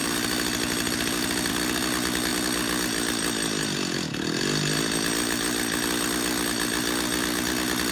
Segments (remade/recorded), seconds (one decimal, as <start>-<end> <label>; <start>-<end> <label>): 0.0-7.9 recorded